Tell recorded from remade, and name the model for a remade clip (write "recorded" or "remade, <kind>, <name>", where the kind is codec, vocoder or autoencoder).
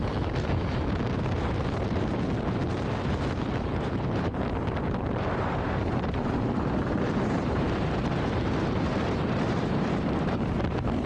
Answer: remade, vocoder, BigVGAN v2